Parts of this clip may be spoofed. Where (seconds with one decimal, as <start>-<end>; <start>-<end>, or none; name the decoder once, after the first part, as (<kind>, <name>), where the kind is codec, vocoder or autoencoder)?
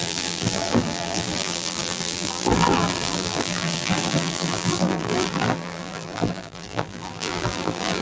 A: 0.0-8.0 (vocoder, BigVGAN v2)